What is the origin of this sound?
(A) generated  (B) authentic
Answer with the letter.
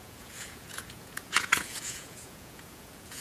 A